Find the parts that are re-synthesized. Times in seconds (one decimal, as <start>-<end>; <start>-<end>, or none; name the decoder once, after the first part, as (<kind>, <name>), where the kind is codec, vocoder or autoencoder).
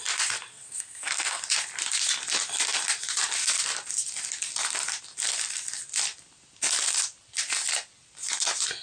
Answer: 0.5-1.4 (codec, SNAC)